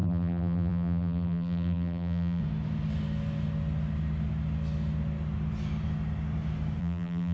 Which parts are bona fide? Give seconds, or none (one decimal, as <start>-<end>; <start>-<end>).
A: 2.4-6.8